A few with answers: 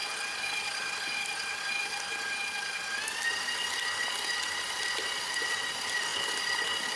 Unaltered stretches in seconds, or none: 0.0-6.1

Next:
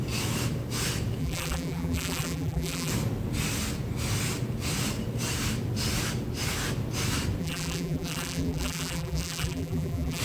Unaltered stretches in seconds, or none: 0.0-1.2; 2.9-7.4

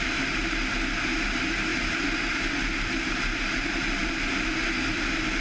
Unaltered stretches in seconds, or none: none

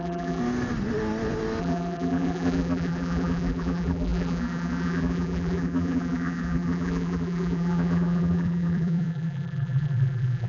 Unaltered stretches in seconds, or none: 0.4-1.6

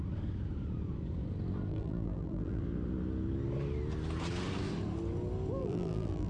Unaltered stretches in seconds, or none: 0.0-1.7; 2.6-5.6

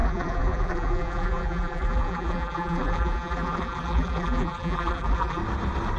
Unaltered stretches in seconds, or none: 5.4-6.0

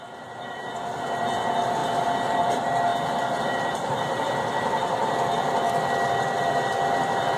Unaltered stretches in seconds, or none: 1.8-2.4; 2.9-3.4; 5.0-6.4

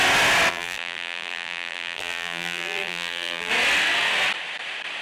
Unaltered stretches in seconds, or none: 0.0-0.5; 3.5-5.0